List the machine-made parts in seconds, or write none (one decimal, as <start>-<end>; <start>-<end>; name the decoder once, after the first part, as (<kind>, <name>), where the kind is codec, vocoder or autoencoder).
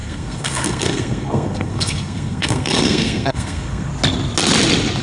0.0-3.9 (codec, SNAC)